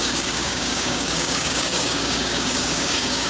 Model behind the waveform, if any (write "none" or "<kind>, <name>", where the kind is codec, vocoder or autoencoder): codec, DAC